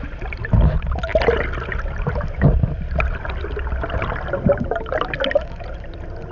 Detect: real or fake real